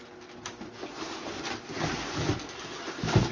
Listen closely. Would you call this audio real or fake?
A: real